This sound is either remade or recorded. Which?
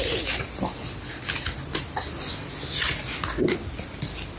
recorded